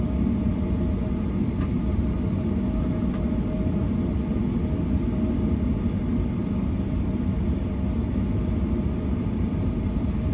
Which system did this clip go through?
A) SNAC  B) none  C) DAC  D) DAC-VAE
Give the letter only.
B